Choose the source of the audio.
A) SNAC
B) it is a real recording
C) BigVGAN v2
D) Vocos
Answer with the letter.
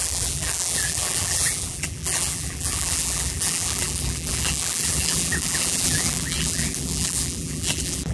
C